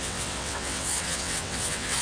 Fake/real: fake